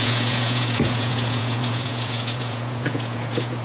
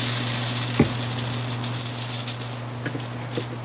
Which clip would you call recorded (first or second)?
second